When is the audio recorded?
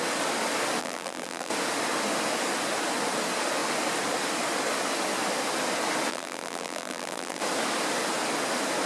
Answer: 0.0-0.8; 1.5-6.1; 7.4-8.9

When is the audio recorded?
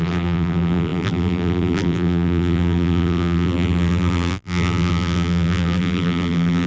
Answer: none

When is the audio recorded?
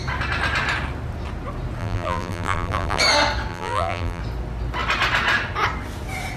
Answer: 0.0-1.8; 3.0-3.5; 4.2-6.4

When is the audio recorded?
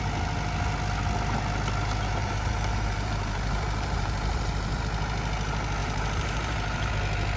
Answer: 0.0-2.2; 4.8-5.8; 6.9-7.4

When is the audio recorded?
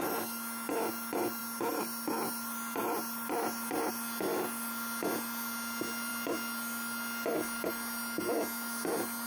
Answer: 0.0-9.3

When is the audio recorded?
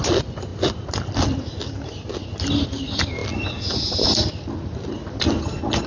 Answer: 0.0-5.9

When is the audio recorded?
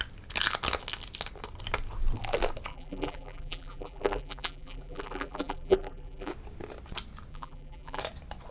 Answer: 0.0-2.7; 6.3-7.3; 8.0-8.5